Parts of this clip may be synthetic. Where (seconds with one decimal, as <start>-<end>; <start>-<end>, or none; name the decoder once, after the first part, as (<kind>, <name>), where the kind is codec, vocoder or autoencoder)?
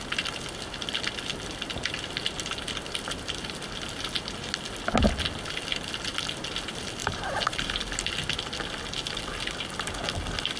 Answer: 7.0-7.8 (vocoder, BigVGAN v2)